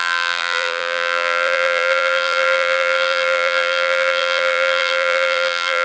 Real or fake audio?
fake